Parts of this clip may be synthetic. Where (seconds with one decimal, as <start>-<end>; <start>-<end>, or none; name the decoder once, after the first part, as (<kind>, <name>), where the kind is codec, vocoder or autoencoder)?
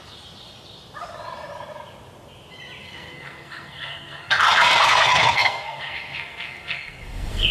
2.8-7.5 (codec, SNAC)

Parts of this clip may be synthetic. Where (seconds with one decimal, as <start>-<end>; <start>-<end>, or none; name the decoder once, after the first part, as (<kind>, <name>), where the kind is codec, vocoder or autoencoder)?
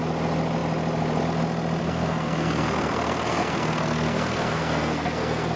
1.8-5.6 (codec, SNAC)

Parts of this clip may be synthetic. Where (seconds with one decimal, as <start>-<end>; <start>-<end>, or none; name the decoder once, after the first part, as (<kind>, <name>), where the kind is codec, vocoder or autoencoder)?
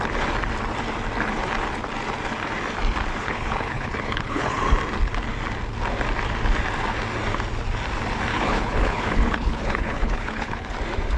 3.2-4.6 (codec, HILCodec); 8.3-10.7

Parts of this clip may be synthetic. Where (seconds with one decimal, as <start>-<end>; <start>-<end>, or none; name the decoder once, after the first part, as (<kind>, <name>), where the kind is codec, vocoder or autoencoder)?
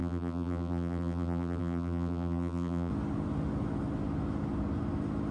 0.0-2.9 (vocoder, BigVGAN v2)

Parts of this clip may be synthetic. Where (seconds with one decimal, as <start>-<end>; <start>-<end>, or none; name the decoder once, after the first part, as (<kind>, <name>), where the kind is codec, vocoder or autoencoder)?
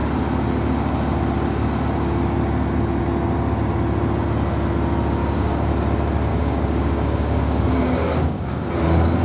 5.2-5.7 (codec, DAC); 6.3-8.7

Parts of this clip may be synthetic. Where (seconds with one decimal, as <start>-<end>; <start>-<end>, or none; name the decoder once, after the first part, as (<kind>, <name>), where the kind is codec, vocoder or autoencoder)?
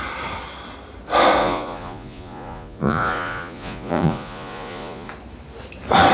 1.4-5.1 (vocoder, Vocos)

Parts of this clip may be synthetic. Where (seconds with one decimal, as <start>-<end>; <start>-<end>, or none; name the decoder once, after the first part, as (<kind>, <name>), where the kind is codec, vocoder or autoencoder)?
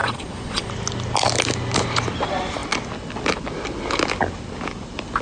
0.0-0.7 (vocoder, Vocos)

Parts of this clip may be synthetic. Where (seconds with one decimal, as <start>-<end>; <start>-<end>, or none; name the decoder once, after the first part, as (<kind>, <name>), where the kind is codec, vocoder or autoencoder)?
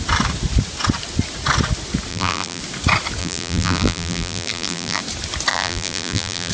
2.1-2.6 (vocoder, BigVGAN v2); 3.2-5.0; 5.5-6.5